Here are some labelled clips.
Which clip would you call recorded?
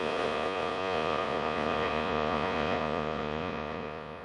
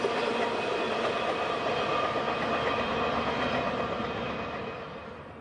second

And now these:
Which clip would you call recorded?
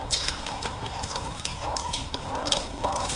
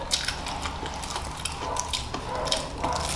second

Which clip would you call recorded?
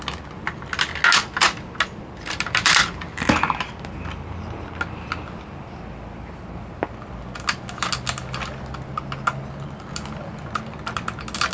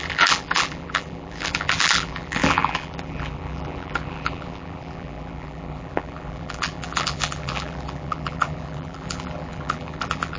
first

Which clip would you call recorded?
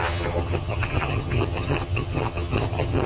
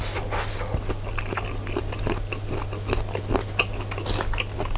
second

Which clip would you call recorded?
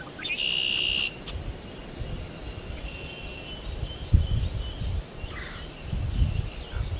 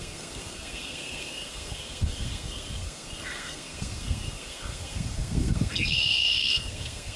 first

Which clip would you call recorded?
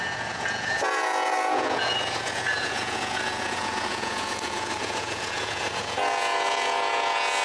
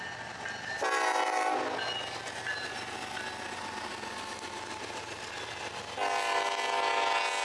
second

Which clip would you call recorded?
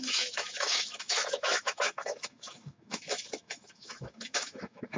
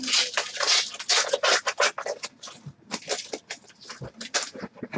second